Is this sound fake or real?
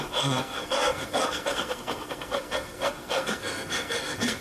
fake